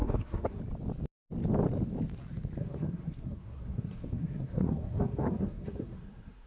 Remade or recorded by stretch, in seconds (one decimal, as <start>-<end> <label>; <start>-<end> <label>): 0.0-0.6 remade; 0.6-2.6 recorded; 2.6-6.5 remade

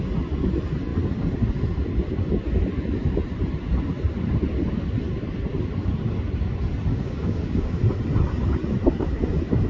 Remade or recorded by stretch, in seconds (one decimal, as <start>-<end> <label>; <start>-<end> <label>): 0.0-6.9 recorded; 6.9-7.8 remade; 7.8-9.7 recorded

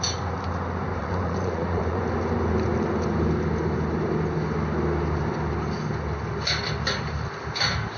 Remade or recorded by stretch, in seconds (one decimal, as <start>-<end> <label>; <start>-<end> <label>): 0.0-1.0 recorded; 1.0-2.0 remade; 2.0-8.0 recorded